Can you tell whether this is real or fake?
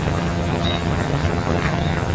fake